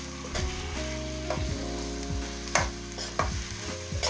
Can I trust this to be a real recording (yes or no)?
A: yes